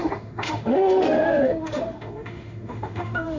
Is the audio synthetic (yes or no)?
yes